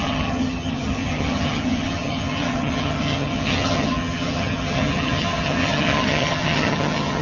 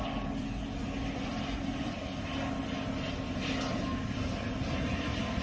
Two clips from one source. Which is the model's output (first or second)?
first